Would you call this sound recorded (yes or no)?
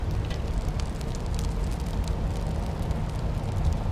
yes